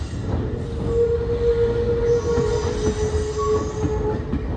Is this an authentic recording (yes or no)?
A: yes